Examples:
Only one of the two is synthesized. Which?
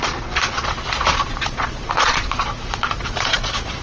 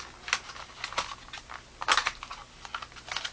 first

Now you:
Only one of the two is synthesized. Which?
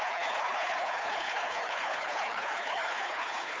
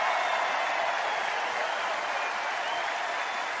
first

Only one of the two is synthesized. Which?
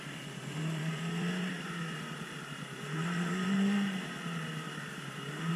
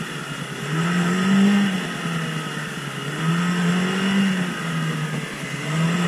first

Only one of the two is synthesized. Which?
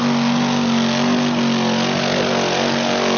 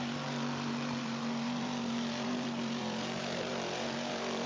second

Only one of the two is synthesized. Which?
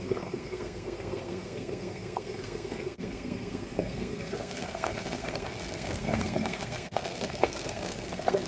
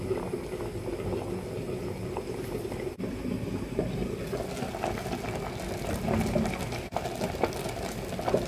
first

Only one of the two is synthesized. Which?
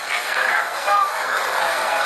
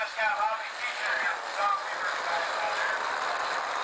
first